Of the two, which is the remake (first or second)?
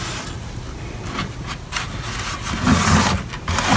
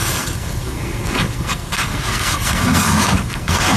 second